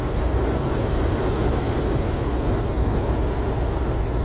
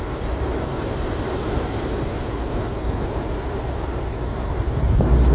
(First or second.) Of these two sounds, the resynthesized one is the second